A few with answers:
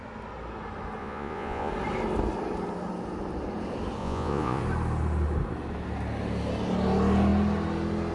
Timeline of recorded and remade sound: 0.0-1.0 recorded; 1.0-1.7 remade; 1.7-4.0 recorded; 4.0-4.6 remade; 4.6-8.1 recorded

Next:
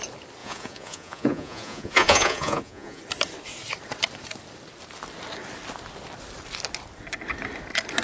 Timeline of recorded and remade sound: 0.0-0.4 recorded; 0.4-3.0 remade; 3.0-8.0 recorded

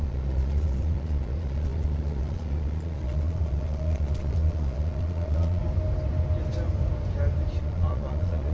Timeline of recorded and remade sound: 0.0-5.6 remade; 5.6-7.6 recorded; 7.6-8.5 remade

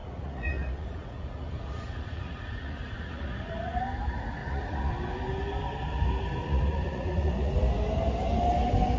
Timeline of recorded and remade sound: 0.0-3.8 remade; 3.8-4.4 recorded; 4.4-4.9 remade; 4.9-6.4 recorded; 6.4-7.5 remade; 7.5-9.0 recorded